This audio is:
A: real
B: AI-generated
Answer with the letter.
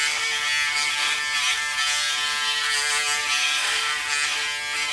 A